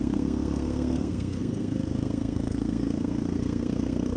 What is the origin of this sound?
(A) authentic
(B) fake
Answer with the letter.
B